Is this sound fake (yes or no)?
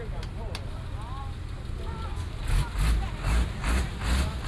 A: no